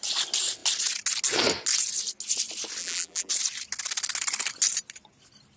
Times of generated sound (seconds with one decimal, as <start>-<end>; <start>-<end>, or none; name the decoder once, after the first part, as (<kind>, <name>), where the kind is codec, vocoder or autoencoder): 2.8-3.3 (vocoder, BigVGAN v2)